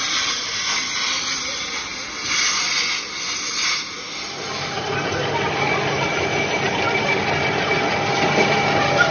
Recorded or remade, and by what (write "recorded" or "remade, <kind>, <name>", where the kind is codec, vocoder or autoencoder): recorded